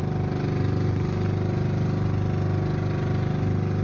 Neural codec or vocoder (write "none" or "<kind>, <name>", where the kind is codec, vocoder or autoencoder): none